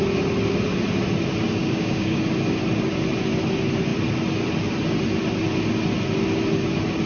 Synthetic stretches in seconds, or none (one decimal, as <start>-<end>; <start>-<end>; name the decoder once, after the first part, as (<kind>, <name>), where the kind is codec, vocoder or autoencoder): 1.6-2.2 (codec, DAC)